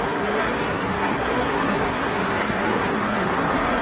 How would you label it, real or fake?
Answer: fake